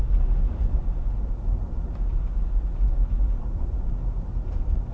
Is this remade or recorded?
recorded